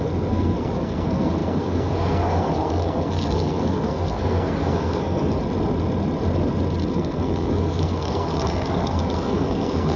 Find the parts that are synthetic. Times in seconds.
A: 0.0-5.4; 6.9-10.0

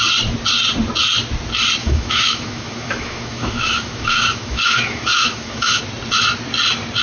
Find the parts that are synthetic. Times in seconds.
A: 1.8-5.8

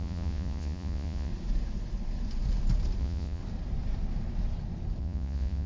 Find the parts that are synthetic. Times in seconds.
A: 0.0-1.3; 3.0-3.4; 5.0-5.7

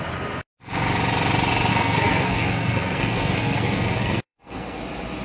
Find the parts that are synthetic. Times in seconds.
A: 1.7-4.8

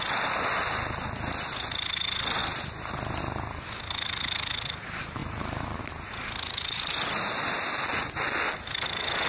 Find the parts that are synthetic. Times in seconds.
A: 2.4-3.2; 5.2-5.8